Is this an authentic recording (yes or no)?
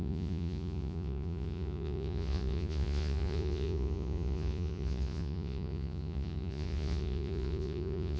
no